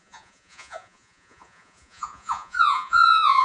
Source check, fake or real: fake